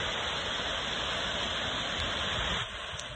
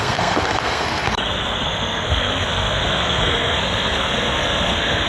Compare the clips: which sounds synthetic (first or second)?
second